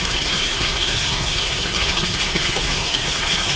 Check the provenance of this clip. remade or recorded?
remade